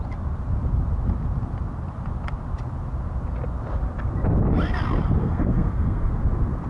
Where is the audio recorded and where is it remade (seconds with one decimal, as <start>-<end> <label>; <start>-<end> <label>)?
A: 0.0-5.2 recorded; 5.2-6.1 remade; 6.1-6.7 recorded